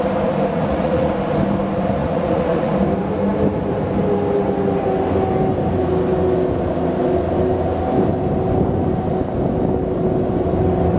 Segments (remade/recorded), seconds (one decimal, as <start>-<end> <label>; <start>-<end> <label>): 0.0-0.5 recorded; 0.5-1.1 remade; 1.1-2.0 recorded; 2.0-2.7 remade; 2.7-11.0 recorded